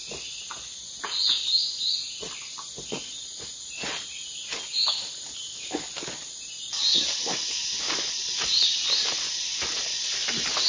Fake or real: real